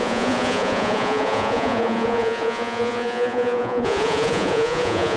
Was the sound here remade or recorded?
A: remade